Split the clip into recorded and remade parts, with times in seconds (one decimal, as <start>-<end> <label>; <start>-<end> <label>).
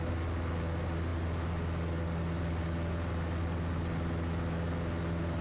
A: 0.0-5.4 recorded